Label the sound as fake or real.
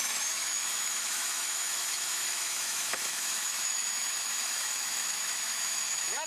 fake